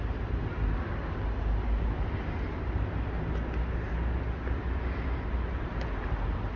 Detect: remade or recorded recorded